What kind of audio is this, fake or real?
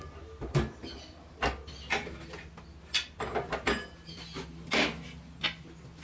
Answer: real